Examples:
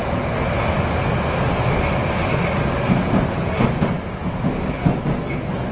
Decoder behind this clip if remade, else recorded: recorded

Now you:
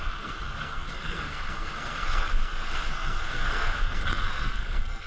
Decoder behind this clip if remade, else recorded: remade, codec, SNAC